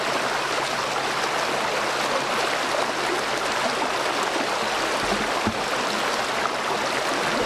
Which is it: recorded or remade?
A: recorded